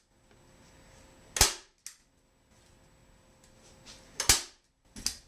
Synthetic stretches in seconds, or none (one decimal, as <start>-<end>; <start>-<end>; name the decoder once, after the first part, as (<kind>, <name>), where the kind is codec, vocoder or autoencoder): none